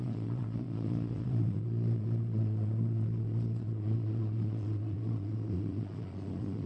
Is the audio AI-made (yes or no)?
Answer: yes